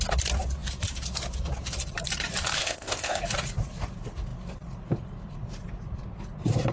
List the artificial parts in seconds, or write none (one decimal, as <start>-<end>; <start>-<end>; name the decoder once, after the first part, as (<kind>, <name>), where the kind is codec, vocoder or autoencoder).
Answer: 2.6-3.2 (codec, ZipCodec)